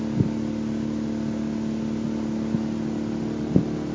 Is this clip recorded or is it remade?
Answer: recorded